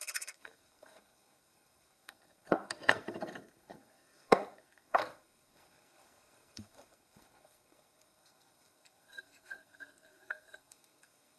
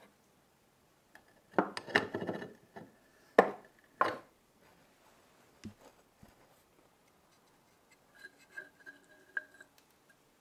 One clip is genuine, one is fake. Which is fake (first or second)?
first